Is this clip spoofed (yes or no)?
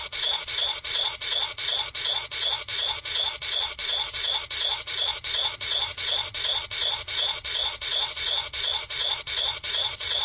yes